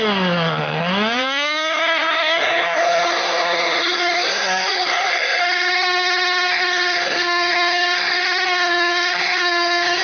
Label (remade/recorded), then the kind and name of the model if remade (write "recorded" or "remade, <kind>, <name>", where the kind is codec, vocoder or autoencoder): remade, codec, SNAC